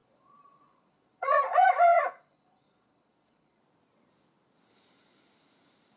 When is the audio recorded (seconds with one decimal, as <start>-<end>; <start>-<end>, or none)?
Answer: 3.6-6.0

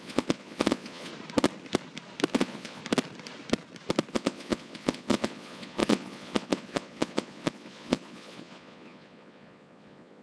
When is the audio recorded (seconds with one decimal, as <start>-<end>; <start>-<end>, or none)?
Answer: 1.1-2.3; 2.8-4.1